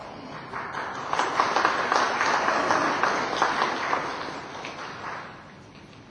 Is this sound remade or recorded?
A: recorded